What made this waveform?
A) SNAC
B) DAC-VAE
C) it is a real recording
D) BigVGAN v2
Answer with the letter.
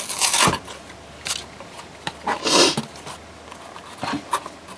C